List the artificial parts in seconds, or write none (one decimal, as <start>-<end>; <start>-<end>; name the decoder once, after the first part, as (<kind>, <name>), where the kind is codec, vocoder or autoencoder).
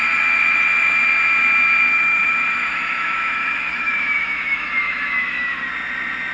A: 1.9-5.6 (autoencoder, DAC-VAE)